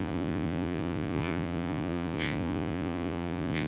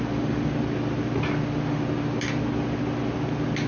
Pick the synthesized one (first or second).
first